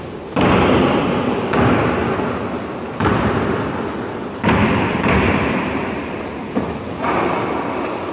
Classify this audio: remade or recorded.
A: recorded